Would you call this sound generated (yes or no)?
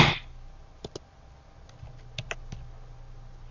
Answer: no